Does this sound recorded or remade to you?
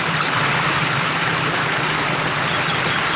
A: recorded